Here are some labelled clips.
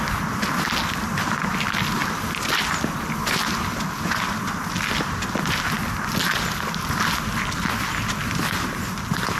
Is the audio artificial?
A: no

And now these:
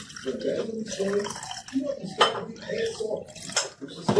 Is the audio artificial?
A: no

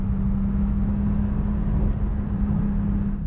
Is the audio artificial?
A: no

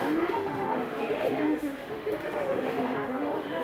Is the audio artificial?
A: yes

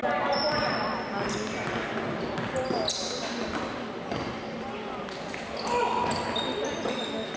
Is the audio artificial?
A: no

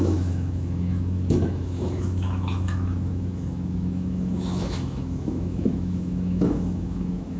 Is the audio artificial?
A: yes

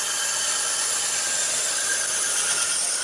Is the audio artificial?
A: no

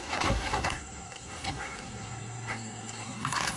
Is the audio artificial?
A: yes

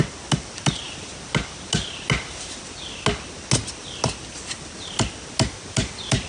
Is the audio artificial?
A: no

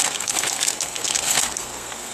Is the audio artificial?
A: yes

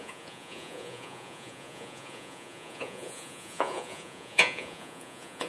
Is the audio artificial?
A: yes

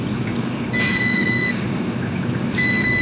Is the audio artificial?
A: yes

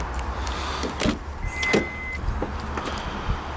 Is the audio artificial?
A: no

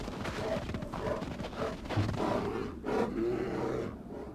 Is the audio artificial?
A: no